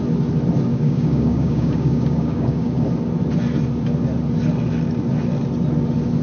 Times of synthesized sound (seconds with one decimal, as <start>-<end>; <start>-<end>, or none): 0.7-2.8